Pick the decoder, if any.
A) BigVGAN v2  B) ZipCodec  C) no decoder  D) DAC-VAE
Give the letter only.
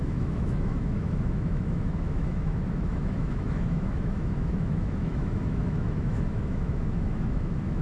D